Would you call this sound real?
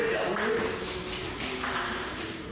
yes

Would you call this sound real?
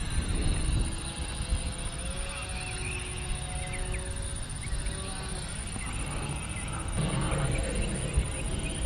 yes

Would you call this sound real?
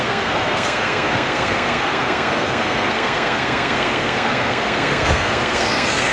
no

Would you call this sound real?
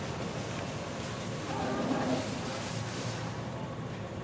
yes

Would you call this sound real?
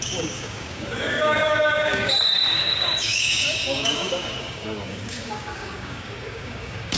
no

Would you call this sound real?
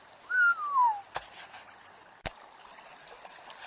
yes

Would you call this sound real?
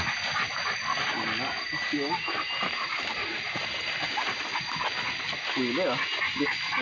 yes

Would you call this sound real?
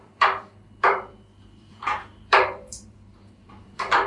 no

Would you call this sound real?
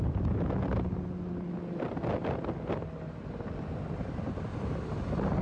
yes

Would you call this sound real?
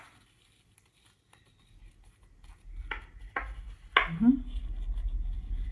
yes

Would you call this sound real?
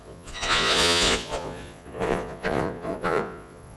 no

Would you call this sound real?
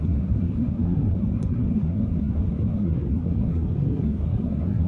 no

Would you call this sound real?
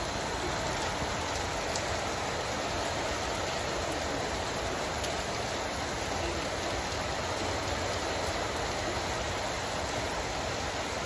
yes